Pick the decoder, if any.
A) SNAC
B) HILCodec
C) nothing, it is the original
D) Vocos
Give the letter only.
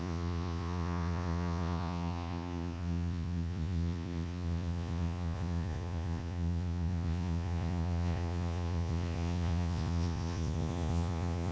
D